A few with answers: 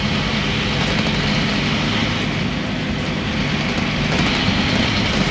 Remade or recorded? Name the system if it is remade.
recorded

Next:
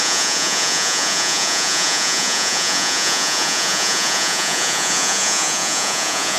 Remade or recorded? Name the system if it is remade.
remade, vocoder, Vocos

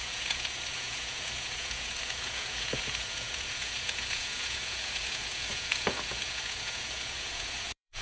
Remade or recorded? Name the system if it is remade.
remade, vocoder, Vocos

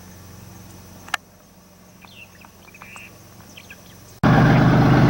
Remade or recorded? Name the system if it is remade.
recorded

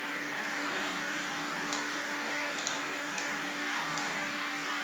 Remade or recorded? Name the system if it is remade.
remade, codec, DAC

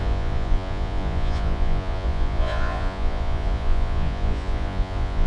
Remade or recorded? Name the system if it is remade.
remade, vocoder, Vocos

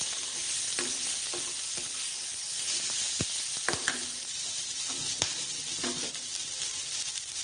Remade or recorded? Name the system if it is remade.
recorded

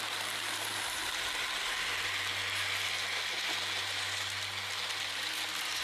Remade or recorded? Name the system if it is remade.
recorded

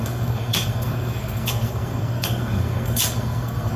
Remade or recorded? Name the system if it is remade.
remade, codec, SNAC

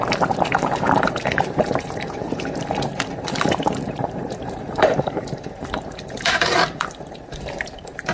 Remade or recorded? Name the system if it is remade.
remade, vocoder, BigVGAN v2